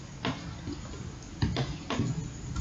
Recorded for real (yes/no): yes